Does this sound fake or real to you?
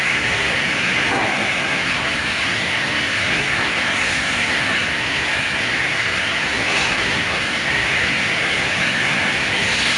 fake